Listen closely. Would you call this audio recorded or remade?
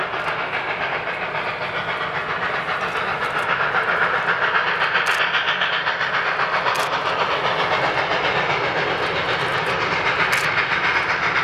recorded